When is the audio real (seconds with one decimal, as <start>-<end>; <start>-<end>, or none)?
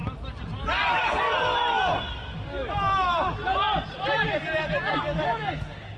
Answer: 0.0-0.9; 1.3-4.9